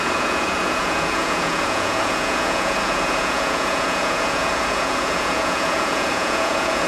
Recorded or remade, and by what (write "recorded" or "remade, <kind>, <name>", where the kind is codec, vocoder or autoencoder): remade, vocoder, Vocos